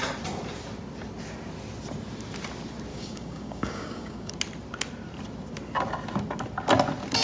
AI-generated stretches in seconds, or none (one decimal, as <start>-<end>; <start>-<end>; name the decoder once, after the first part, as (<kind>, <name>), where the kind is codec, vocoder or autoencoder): 2.9-4.3 (codec, DAC)

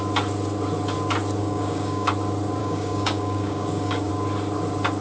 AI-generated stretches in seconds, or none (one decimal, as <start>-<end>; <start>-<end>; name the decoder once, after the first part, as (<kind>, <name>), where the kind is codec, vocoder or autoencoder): 1.4-2.1 (codec, DAC); 2.6-4.1

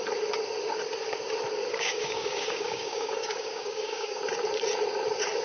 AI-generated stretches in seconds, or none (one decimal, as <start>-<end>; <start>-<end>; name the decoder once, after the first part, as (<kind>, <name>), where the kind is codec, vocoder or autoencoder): 1.7-4.2 (codec, DAC)

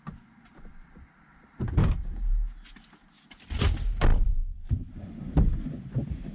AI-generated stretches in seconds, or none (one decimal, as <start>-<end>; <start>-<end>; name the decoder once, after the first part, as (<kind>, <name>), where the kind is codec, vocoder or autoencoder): 1.8-2.3 (codec, DAC)

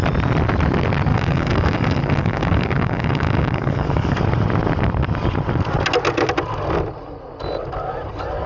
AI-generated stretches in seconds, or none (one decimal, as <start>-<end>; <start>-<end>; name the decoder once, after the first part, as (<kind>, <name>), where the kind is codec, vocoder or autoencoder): 1.1-4.2 (codec, DAC)

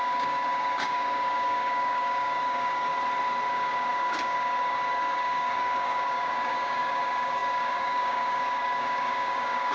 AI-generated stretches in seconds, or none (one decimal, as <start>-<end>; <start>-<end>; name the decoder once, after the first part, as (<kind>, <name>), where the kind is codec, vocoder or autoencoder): 0.0-2.9 (codec, DAC); 3.5-9.7

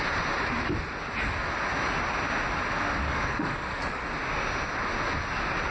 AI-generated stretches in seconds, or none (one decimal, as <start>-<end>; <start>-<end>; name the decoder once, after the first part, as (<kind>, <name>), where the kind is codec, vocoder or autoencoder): 3.0-3.8 (codec, DAC)

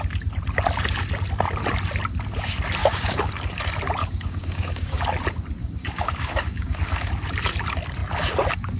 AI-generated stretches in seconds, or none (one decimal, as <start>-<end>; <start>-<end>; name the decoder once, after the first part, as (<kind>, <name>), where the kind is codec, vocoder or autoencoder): 2.8-3.3 (codec, DAC); 4.0-5.0; 5.6-7.1